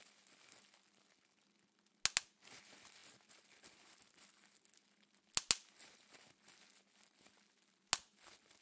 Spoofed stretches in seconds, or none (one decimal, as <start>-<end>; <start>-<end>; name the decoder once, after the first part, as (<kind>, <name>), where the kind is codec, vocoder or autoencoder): none